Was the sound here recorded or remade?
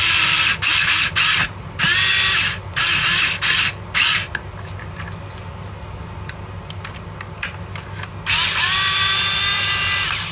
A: recorded